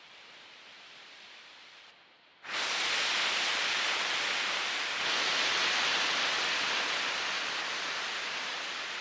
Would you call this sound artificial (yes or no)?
no